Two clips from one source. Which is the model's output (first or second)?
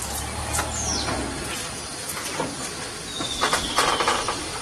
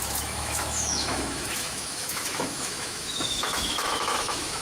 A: second